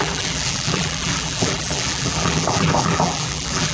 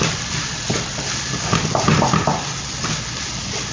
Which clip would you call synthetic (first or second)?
first